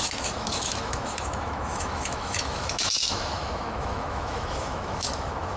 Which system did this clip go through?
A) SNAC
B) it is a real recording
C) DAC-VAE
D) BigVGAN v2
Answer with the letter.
C